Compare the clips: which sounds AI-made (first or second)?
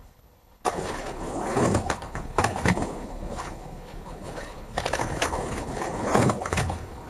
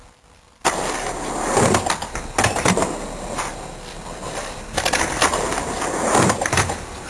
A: first